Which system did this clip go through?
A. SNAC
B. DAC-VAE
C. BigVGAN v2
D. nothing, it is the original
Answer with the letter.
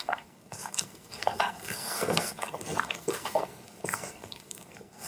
A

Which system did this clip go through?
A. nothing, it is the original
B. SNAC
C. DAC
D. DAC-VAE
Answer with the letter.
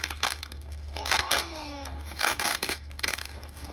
C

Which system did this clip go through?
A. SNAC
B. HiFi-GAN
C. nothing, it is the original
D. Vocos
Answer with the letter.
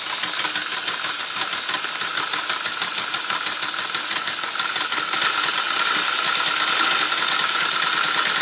C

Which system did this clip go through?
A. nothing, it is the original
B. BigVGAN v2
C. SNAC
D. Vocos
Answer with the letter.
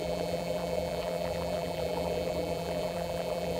B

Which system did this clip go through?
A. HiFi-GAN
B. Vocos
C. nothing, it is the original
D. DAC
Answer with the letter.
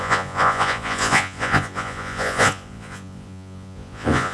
B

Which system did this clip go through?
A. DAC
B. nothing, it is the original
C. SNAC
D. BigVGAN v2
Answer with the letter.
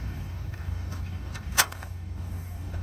A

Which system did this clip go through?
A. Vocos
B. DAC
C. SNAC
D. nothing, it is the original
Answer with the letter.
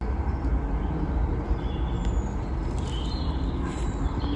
D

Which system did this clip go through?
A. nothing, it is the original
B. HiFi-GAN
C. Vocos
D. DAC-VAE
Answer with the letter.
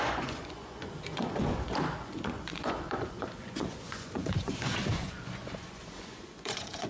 C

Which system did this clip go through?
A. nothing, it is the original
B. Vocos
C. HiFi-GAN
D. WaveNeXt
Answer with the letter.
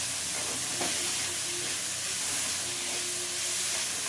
A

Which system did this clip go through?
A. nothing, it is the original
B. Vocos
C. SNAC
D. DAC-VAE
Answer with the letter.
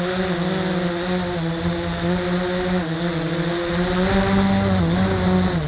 A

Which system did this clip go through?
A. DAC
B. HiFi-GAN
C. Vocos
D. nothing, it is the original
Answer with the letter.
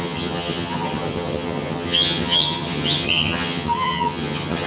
B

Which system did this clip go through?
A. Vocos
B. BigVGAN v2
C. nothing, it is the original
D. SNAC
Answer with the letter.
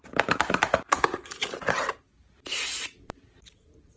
B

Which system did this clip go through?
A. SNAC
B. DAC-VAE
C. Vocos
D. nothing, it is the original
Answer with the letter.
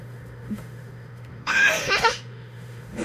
B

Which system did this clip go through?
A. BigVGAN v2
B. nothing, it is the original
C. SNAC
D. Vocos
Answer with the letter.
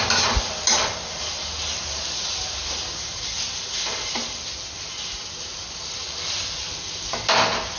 B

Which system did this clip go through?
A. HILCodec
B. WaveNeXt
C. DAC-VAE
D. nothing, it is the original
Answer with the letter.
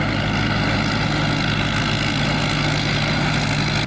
D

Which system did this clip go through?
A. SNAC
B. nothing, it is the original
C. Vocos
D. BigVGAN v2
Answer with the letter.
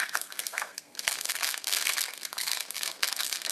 A